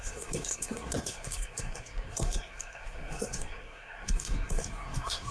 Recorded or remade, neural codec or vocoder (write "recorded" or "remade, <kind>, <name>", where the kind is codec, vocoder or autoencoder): remade, codec, SNAC